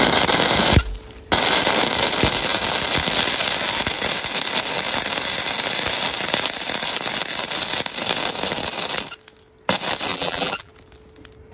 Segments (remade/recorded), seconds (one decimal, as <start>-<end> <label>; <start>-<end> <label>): 0.0-10.1 recorded; 10.1-10.7 remade; 10.7-11.5 recorded